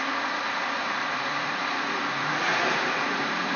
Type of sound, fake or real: fake